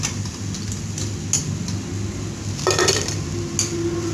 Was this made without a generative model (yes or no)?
yes